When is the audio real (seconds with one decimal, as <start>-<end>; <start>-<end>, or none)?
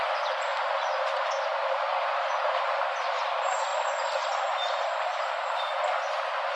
0.5-2.7